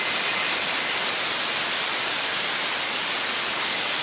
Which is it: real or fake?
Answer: real